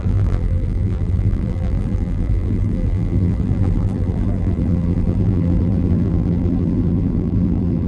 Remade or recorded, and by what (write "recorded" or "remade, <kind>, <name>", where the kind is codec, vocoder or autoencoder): remade, vocoder, BigVGAN v2